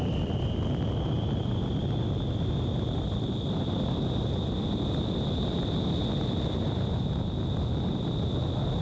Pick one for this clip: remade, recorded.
recorded